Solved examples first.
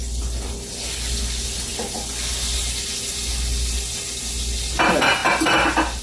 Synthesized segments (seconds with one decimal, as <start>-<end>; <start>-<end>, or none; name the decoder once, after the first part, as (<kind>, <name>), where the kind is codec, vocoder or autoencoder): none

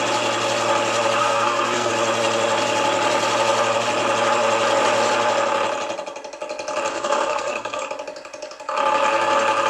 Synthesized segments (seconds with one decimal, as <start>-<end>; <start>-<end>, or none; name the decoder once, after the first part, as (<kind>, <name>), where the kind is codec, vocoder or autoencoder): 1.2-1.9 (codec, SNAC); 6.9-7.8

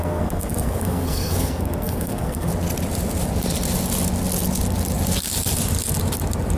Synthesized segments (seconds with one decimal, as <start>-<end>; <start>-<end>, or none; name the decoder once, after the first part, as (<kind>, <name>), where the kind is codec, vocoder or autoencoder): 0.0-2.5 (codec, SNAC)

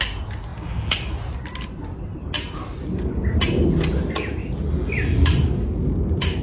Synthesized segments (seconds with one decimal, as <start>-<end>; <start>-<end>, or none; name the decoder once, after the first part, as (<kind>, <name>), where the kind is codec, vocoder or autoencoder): none

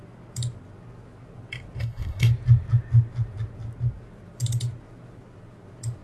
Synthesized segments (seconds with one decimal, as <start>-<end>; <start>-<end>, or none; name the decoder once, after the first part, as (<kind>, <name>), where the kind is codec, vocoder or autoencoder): 1.8-2.3 (codec, SNAC)

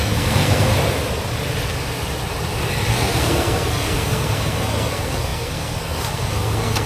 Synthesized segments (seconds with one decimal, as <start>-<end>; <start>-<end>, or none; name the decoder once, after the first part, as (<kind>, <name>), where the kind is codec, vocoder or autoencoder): 0.0-0.7 (codec, SNAC); 2.9-6.9

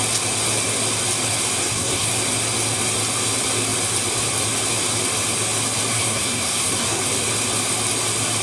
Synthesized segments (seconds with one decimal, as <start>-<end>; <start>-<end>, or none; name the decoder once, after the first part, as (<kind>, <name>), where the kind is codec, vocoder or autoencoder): 1.6-2.1 (codec, SNAC); 5.9-7.0

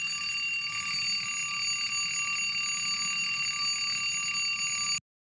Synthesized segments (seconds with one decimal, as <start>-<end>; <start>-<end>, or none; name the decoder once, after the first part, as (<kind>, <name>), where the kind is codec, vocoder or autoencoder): none